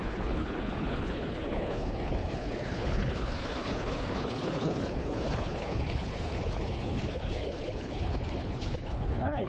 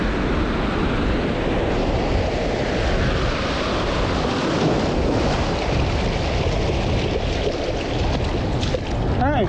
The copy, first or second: first